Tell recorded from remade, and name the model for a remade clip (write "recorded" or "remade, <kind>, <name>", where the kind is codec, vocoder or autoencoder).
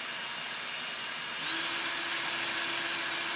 recorded